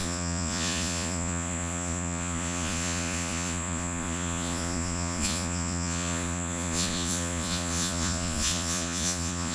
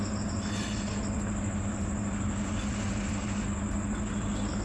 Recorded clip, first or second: second